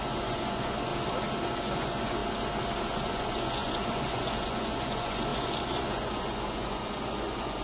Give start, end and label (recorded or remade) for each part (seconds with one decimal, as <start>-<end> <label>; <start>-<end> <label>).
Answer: 0.0-0.9 remade; 0.9-1.6 recorded; 1.6-2.2 remade; 2.2-2.8 recorded; 2.8-7.6 remade